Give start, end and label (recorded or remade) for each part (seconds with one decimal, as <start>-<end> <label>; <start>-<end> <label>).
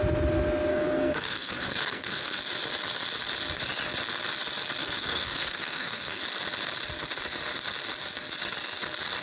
0.0-0.7 recorded; 0.7-2.4 remade; 2.4-4.8 recorded; 4.8-6.2 remade; 6.2-9.2 recorded